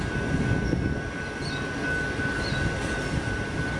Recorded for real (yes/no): yes